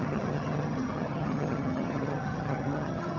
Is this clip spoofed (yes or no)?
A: yes